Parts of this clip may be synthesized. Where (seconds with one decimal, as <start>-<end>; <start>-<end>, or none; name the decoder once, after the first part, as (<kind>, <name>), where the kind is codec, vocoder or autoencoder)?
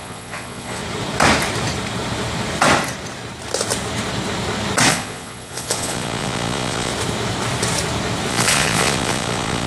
0.0-0.8 (vocoder, Vocos); 4.9-6.9; 8.3-9.7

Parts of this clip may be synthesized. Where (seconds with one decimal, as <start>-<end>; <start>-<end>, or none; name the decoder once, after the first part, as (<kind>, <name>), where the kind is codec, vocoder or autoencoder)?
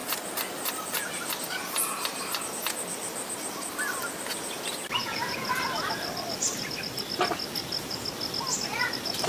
5.0-5.6 (vocoder, Vocos)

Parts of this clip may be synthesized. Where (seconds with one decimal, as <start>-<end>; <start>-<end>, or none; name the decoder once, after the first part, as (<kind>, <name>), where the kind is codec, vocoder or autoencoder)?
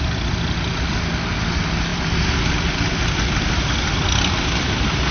none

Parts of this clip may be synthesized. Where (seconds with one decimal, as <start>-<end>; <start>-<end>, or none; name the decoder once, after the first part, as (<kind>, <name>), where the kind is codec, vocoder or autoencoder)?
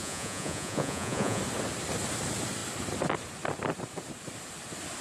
0.0-1.4 (vocoder, Vocos)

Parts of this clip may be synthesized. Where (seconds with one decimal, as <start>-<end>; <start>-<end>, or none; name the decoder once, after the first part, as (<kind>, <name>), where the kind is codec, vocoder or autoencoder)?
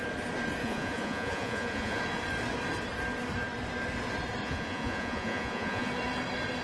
0.6-2.0 (vocoder, Vocos); 4.4-5.9